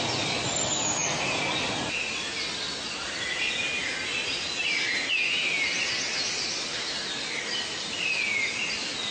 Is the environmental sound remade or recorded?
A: recorded